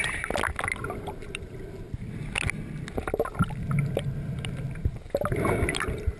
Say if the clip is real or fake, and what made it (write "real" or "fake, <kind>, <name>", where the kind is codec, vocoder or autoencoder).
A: real